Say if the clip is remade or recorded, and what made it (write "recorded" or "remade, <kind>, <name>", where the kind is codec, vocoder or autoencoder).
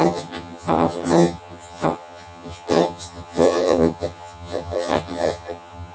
remade, vocoder, HiFi-GAN